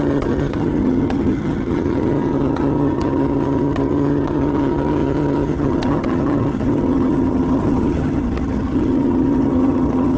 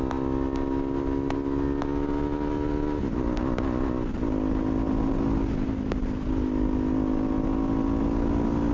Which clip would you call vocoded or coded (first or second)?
first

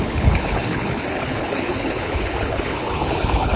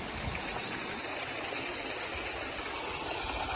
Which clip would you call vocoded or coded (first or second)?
first